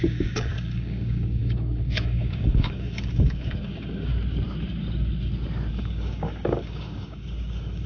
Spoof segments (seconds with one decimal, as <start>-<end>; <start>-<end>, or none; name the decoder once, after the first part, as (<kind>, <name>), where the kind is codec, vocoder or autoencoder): 0.0-4.1 (codec, DAC); 5.7-7.9